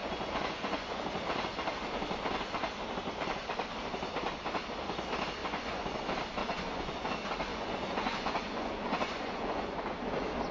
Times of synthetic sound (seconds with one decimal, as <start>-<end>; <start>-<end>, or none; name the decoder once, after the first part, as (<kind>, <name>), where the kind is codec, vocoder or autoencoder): 0.0-1.0 (vocoder, Vocos); 5.4-6.0; 6.4-7.1; 7.5-9.8